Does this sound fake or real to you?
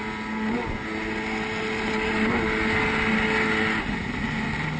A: real